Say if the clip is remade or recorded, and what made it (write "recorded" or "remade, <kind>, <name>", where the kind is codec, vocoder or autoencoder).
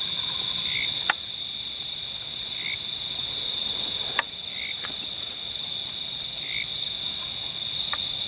recorded